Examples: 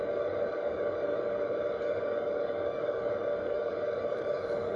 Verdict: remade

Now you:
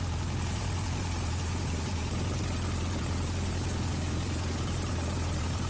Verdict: remade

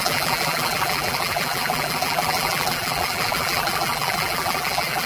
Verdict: remade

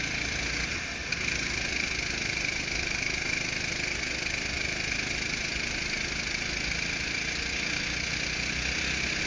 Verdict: recorded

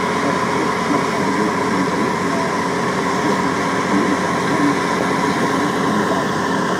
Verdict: recorded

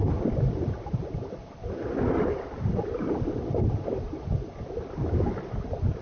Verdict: recorded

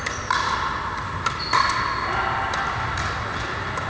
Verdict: recorded